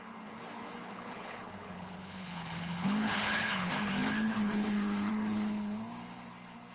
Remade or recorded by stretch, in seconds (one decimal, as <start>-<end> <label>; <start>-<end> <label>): 0.0-6.7 remade